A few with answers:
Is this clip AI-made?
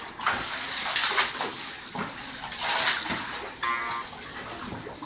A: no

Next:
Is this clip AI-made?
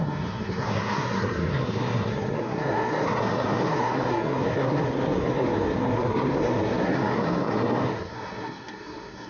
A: yes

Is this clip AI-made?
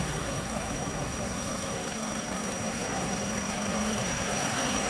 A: yes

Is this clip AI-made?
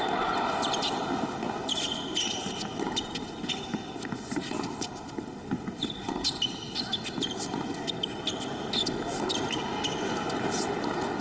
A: no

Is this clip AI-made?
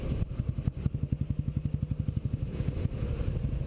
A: no